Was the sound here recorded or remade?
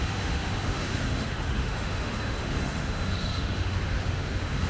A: remade